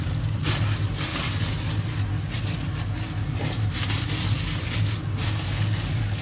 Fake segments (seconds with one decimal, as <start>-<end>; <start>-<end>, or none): none